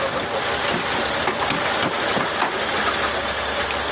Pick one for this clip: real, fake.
real